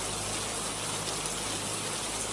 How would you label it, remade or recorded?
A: recorded